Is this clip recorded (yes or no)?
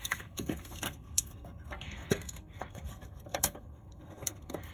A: no